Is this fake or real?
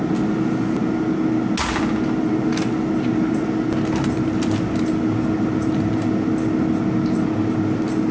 real